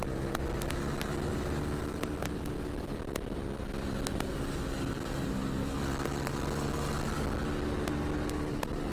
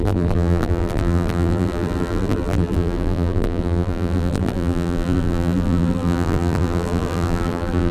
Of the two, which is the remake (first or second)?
second